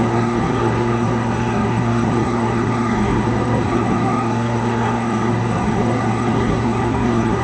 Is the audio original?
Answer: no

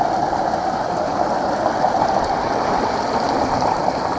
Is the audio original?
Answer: yes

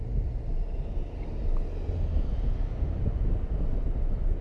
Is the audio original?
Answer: yes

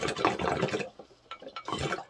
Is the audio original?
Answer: yes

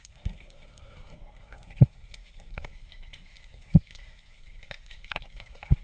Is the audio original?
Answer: no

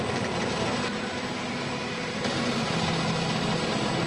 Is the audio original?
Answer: yes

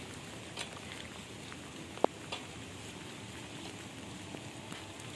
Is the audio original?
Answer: yes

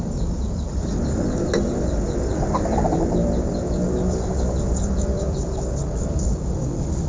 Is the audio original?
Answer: yes